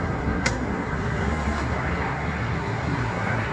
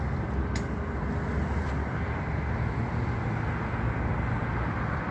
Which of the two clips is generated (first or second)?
first